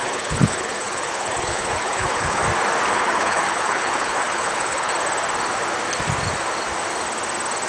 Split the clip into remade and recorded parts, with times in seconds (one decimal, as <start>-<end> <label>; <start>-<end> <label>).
0.0-2.4 remade; 2.4-2.9 recorded; 2.9-4.9 remade; 4.9-7.7 recorded